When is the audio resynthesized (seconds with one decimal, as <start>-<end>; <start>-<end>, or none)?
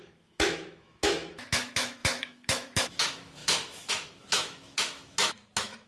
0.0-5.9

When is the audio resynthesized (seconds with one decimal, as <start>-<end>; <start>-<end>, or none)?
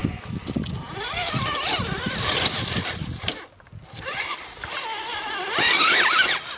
none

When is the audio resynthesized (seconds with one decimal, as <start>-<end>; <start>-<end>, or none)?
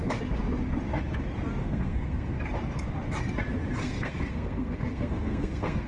1.6-2.4; 3.8-5.9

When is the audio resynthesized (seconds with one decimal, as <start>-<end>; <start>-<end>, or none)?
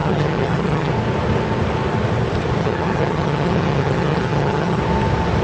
0.0-0.9; 2.6-4.8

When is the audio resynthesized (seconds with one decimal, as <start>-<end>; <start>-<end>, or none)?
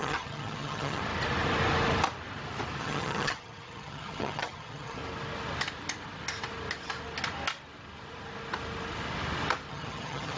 0.0-1.0; 2.8-5.0; 9.7-10.4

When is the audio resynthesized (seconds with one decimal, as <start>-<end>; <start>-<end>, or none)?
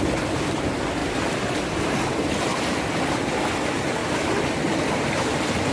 4.0-5.7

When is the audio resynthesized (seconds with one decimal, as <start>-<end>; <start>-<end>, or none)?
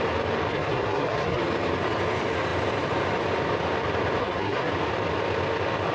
0.5-1.4; 4.2-4.7